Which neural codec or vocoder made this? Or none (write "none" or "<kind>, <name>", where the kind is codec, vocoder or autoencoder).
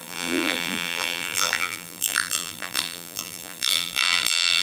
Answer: vocoder, BigVGAN v2